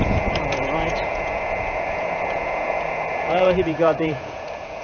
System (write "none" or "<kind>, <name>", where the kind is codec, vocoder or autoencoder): vocoder, Vocos